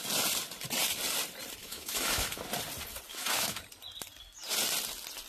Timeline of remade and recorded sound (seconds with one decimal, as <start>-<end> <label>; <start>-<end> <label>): 0.0-1.6 recorded; 1.6-2.4 remade; 2.4-3.1 recorded; 3.1-3.6 remade; 3.6-5.3 recorded